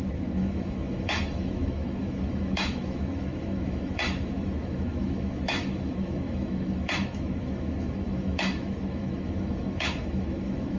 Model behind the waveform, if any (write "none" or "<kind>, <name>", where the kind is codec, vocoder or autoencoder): autoencoder, DAC-VAE